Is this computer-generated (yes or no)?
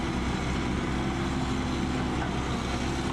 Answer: no